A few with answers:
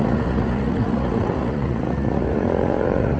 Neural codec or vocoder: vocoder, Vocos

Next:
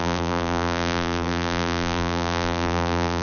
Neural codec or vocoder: vocoder, BigVGAN v2